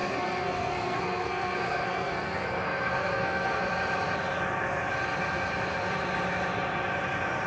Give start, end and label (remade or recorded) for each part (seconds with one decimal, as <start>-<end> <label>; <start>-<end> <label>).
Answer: 0.0-3.6 remade; 3.6-7.5 recorded